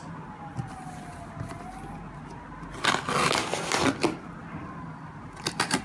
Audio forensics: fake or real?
real